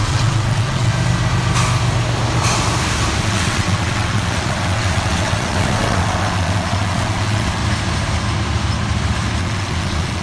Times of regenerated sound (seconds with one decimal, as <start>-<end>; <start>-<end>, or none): 0.0-0.9; 3.2-7.6; 9.4-10.2